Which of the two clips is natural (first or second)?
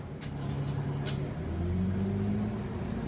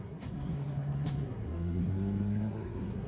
first